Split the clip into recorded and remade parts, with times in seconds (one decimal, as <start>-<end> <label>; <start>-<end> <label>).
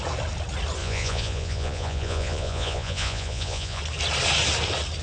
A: 0.0-0.8 recorded; 0.8-3.8 remade; 3.8-5.0 recorded